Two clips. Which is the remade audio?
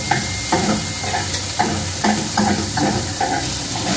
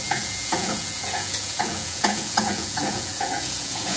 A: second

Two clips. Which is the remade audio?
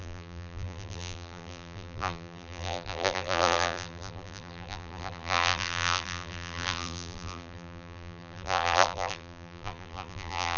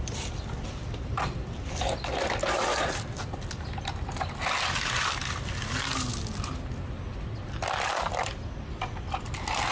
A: first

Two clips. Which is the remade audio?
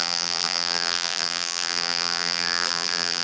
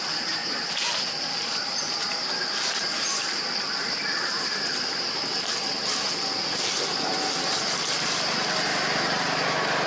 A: first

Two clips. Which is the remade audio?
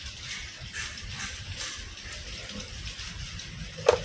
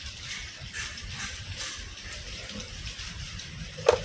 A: second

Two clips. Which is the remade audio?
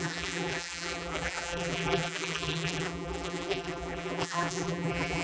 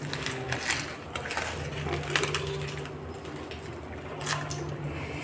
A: first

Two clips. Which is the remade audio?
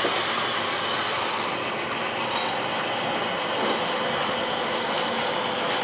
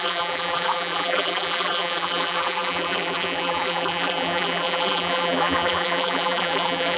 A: second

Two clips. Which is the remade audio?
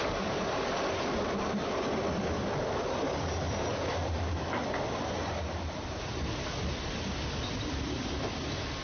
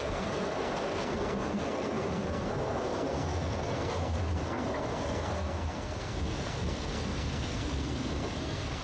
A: second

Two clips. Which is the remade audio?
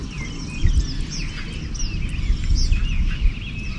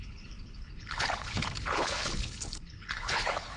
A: second